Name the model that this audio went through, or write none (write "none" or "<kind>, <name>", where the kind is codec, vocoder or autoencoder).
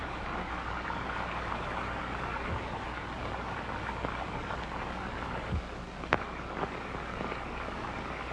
codec, DAC